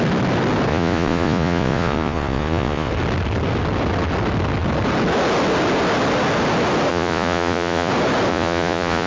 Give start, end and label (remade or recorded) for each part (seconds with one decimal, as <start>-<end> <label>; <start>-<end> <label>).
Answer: 0.0-0.7 recorded; 0.7-2.9 remade; 2.9-6.9 recorded; 6.9-7.9 remade; 7.9-8.3 recorded; 8.3-9.1 remade